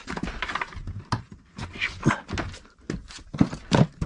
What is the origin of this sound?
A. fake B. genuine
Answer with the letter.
B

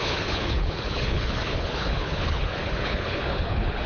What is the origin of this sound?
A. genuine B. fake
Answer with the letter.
B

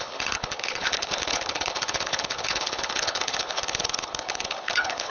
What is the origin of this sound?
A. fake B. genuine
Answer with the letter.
A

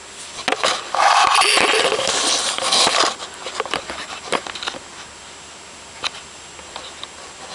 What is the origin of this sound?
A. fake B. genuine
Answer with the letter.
B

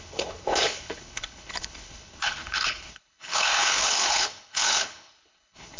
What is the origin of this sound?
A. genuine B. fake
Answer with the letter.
B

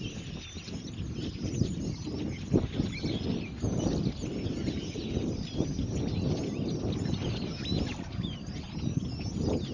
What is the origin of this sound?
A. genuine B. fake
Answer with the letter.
A